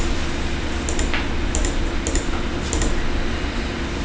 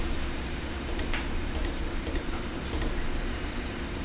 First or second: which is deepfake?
second